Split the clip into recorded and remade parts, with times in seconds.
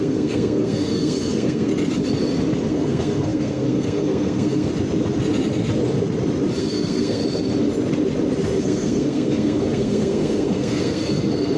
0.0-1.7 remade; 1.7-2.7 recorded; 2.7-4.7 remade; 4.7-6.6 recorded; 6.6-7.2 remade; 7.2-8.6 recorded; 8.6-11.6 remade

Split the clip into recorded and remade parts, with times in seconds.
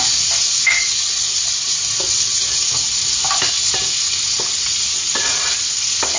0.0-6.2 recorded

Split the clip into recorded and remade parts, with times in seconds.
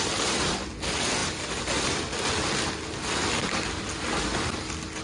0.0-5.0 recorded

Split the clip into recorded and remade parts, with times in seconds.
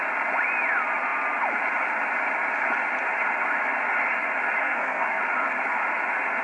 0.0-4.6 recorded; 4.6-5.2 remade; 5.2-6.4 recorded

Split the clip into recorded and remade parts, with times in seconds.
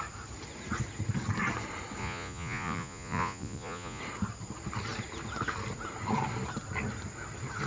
0.0-2.0 recorded; 2.0-4.0 remade; 4.0-7.7 recorded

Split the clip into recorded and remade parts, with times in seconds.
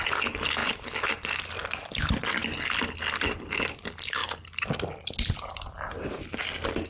0.0-6.9 recorded